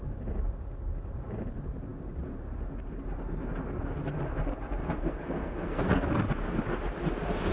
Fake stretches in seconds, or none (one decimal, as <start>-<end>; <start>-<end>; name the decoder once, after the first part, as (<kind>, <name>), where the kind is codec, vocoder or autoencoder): 4.8-6.1 (codec, SNAC)